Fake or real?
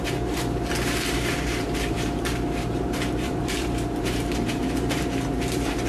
fake